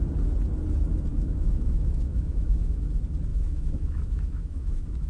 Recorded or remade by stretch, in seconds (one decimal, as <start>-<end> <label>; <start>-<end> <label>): 0.0-1.1 recorded; 1.1-2.9 remade; 2.9-3.3 recorded; 3.3-5.1 remade